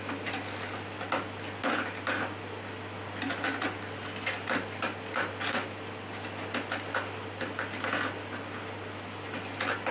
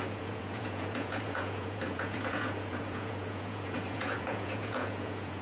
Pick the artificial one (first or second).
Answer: second